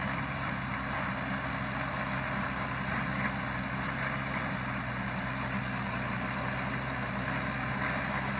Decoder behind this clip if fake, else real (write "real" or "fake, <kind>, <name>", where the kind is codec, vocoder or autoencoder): real